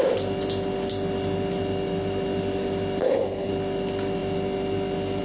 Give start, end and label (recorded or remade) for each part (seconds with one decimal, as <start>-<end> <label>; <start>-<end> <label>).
0.0-3.0 recorded; 3.0-3.5 remade; 3.5-5.2 recorded